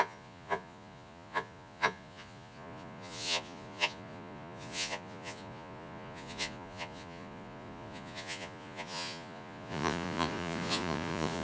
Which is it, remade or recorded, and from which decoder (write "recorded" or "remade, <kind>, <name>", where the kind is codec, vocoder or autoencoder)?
remade, vocoder, Vocos